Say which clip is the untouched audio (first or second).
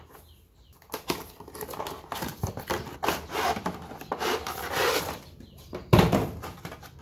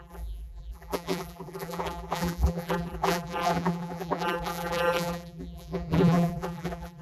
first